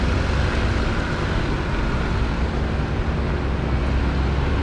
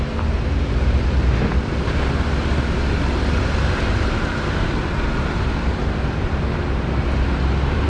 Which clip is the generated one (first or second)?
second